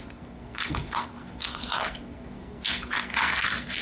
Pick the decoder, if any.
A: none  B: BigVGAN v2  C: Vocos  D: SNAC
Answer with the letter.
D